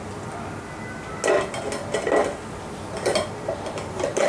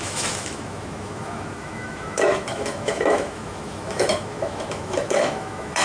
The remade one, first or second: second